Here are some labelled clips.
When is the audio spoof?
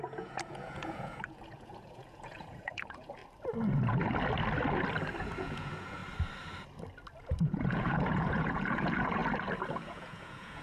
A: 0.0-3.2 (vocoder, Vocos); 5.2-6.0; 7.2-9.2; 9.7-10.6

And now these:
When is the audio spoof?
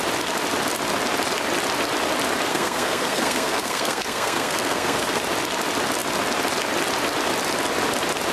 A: 2.5-5.2 (codec, SNAC)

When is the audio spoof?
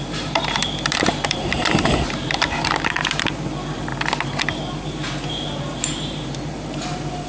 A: 0.0-3.9 (vocoder, BigVGAN v2); 4.9-7.3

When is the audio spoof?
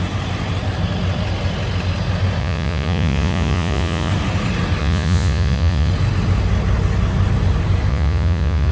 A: 2.4-4.1 (vocoder, Vocos); 4.8-5.9; 7.9-8.7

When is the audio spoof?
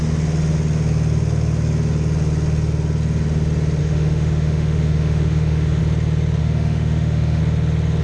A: 3.8-5.8 (autoencoder, DAC-VAE); 6.4-7.4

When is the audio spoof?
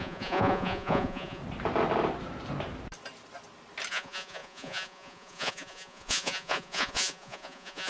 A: 0.0-1.4 (vocoder, Vocos); 3.9-7.9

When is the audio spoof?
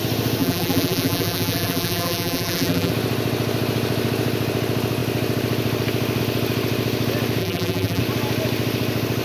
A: 0.4-2.9 (vocoder, BigVGAN v2); 7.4-8.0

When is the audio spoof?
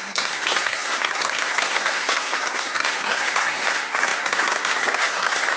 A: 0.0-5.6 (codec, SNAC)